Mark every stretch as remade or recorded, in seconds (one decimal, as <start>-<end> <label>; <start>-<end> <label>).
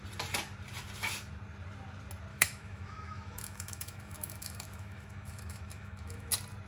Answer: 0.0-2.3 recorded; 2.3-6.3 remade; 6.3-6.7 recorded